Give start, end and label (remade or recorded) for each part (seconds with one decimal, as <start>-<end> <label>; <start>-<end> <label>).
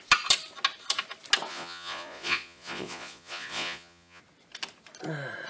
0.0-1.5 recorded; 1.5-4.2 remade; 4.2-5.5 recorded